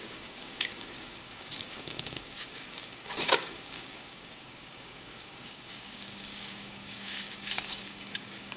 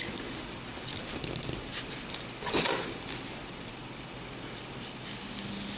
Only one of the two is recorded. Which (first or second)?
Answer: second